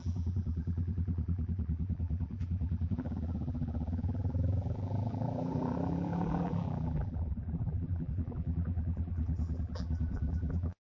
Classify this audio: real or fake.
fake